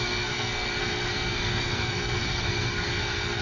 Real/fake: fake